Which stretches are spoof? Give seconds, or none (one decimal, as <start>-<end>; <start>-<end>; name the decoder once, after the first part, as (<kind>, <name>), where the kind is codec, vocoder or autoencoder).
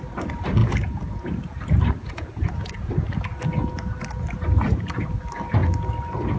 0.6-1.3 (vocoder, Vocos); 2.0-2.9